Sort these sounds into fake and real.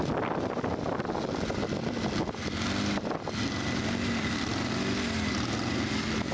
real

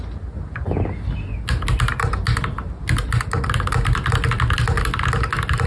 real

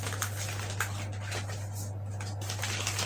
real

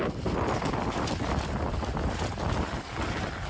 real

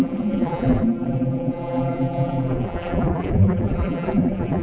fake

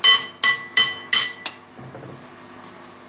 real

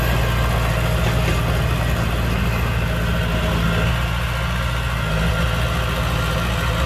real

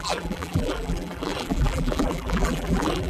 fake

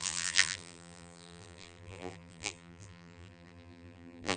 fake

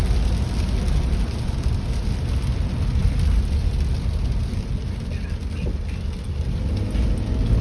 real